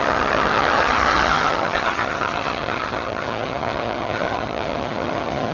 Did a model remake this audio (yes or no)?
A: yes